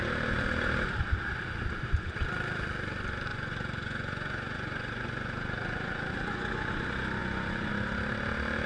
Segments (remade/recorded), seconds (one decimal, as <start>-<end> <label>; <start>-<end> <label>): 0.0-3.3 recorded; 3.3-6.7 remade; 6.7-7.2 recorded; 7.2-7.7 remade; 7.7-8.7 recorded